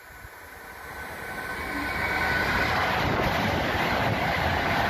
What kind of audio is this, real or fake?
real